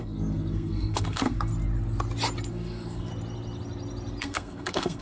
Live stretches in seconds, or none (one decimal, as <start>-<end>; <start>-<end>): 1.5-2.5; 3.1-4.2